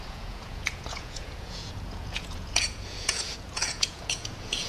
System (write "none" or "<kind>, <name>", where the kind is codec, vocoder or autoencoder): vocoder, Vocos